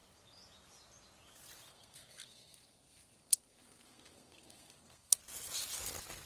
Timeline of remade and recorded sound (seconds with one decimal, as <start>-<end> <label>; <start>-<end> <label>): 0.0-1.7 recorded; 1.7-5.2 remade; 5.2-6.3 recorded